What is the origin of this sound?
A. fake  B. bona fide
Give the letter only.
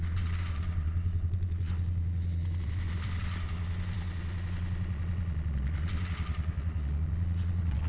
A